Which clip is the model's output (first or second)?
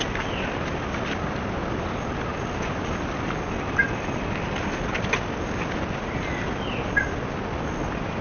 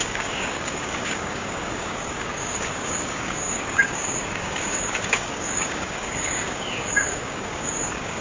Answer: second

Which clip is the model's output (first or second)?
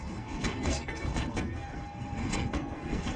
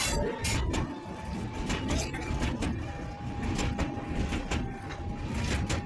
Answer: first